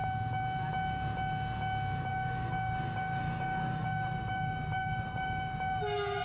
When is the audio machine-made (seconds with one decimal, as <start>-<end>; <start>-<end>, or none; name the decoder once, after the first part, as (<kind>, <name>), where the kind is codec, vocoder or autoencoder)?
2.1-5.8 (codec, DAC)